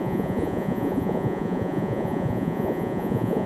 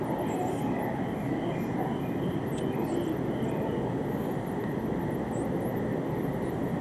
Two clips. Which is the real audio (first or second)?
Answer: second